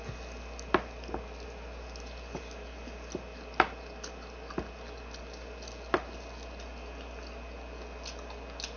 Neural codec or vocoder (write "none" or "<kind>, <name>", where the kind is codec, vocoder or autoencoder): none